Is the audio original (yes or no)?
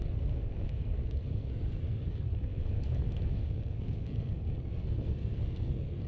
no